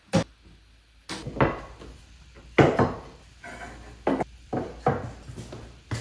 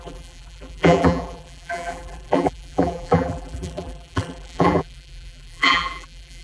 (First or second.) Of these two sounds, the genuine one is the first